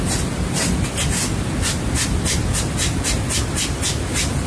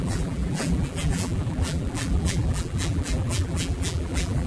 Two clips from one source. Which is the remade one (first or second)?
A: second